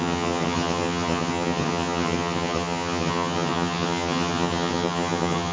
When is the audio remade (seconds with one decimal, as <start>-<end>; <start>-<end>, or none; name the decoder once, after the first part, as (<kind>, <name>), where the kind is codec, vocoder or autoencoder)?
0.0-5.5 (vocoder, HiFi-GAN)

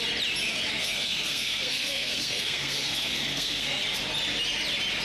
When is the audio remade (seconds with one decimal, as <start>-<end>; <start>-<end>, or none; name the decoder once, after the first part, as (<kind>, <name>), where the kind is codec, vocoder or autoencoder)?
0.8-3.8 (codec, SNAC)

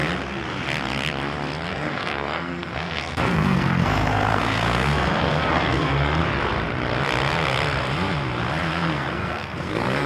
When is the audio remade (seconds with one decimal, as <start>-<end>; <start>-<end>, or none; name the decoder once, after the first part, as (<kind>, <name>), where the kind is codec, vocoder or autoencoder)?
1.7-6.2 (codec, SNAC); 8.7-10.1

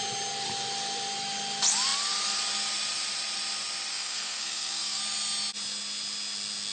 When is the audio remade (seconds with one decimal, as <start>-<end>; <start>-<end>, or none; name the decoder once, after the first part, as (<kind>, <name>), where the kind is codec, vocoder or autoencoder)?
3.9-5.0 (codec, SNAC)

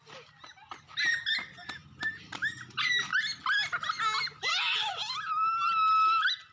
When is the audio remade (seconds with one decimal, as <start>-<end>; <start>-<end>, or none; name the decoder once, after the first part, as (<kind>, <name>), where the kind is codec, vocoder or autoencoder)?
none

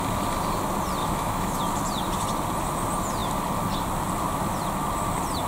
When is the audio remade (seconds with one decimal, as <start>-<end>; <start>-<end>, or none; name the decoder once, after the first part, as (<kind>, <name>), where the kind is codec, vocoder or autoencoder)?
1.0-1.6 (autoencoder, DAC-VAE)